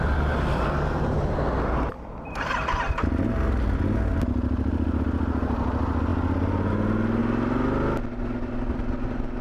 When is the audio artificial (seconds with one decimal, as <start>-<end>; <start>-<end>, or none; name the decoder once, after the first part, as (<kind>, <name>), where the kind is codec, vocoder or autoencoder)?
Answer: none